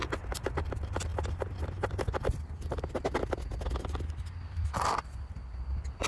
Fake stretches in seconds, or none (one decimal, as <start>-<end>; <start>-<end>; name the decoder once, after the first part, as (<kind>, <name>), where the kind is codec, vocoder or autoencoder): 0.0-1.1 (vocoder, BigVGAN v2); 4.8-6.1